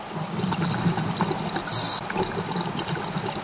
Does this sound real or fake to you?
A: real